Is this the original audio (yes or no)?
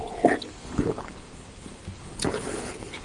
no